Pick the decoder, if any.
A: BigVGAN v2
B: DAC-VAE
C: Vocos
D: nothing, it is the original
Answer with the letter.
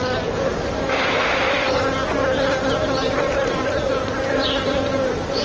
D